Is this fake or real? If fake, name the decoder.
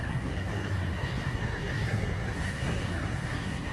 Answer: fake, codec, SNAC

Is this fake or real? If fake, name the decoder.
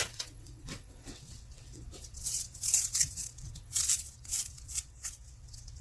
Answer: fake, vocoder, WaveNeXt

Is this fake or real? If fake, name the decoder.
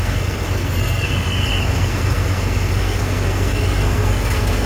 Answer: fake, codec, SNAC